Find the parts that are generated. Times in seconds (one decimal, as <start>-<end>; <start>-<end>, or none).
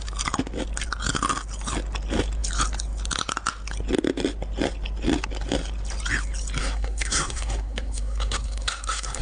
6.6-9.2